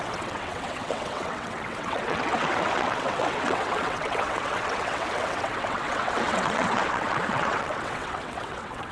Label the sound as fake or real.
fake